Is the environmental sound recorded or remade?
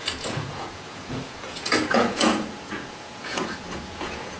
remade